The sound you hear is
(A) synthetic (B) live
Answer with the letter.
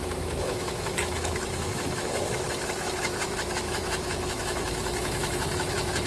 A